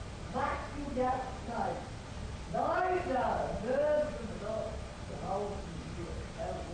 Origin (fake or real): real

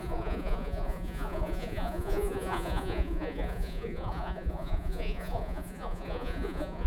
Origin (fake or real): fake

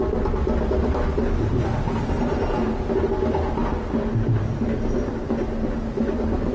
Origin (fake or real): real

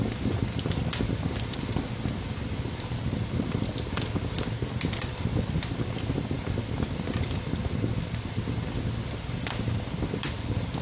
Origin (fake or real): real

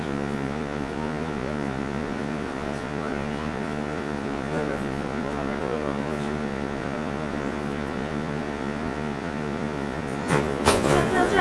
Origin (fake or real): fake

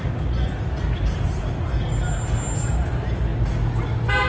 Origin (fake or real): real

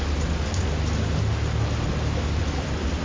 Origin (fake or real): real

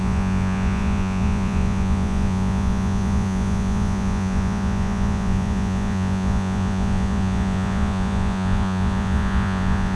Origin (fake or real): fake